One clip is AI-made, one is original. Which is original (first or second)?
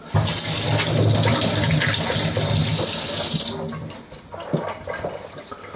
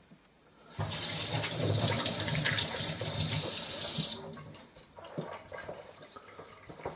first